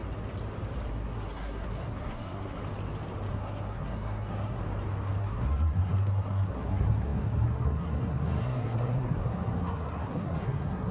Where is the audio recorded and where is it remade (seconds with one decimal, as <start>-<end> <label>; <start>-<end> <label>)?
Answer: 0.0-0.9 recorded; 0.9-2.6 remade; 2.6-3.3 recorded; 3.3-4.6 remade; 4.6-5.2 recorded; 5.2-10.9 remade